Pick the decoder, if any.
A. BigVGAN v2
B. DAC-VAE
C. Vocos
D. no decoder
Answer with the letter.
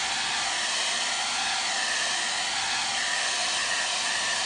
D